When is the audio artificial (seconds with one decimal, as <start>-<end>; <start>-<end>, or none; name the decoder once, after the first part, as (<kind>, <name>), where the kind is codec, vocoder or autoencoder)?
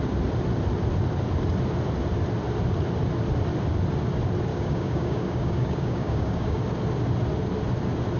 4.5-6.6 (codec, DAC)